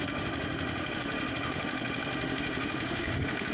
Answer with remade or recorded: remade